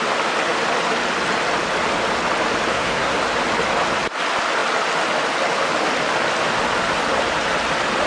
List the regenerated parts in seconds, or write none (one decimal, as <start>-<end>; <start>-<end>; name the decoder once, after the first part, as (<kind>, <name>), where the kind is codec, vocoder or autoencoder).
2.7-3.2 (codec, SNAC)

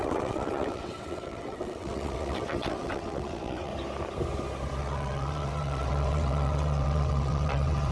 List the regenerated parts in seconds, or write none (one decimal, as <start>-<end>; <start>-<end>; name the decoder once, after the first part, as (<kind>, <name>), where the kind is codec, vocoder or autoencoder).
0.0-3.7 (vocoder, WaveNeXt); 4.8-7.9

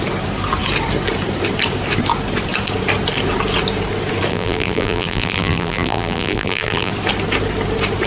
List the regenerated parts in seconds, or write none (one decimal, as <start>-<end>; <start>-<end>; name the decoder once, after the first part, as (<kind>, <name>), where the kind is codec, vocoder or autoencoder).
4.3-6.9 (vocoder, BigVGAN v2)

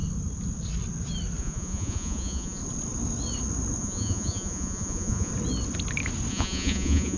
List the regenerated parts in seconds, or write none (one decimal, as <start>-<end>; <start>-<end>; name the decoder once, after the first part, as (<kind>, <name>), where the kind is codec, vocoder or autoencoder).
1.4-2.6 (vocoder, Vocos); 3.8-5.3; 6.3-7.2

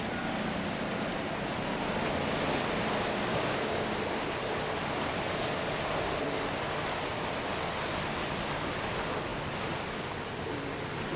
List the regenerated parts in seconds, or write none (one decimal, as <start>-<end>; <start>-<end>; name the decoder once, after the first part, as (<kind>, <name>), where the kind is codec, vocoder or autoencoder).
3.3-3.9 (codec, DAC)